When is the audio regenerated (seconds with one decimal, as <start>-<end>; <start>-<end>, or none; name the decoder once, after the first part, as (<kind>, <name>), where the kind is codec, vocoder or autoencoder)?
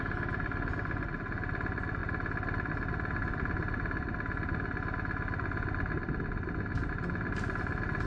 none